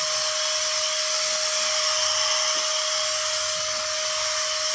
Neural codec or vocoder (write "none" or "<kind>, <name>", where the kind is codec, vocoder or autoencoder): none